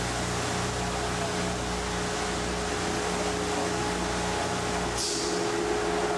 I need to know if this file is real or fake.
real